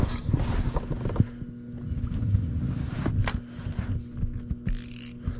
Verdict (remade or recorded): recorded